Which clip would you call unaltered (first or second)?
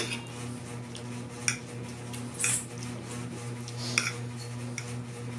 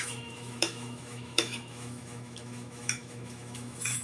first